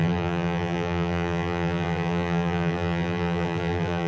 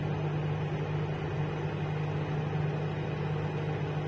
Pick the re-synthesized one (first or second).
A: first